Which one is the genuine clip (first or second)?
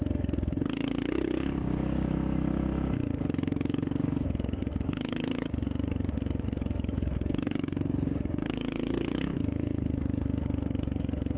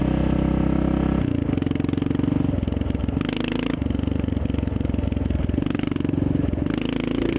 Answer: second